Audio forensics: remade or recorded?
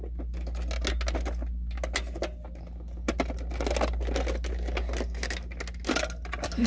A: recorded